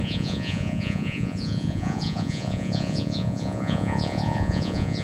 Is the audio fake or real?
fake